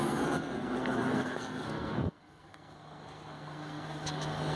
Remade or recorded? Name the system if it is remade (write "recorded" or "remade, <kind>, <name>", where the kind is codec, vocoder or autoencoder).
remade, codec, SNAC